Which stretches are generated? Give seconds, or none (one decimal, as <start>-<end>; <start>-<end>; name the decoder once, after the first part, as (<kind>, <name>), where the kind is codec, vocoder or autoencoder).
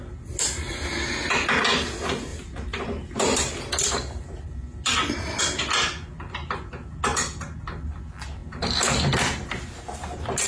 2.3-5.4 (vocoder, BigVGAN v2); 8.4-9.7